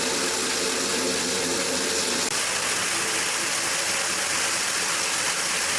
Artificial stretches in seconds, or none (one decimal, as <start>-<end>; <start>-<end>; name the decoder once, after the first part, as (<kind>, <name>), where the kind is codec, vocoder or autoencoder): none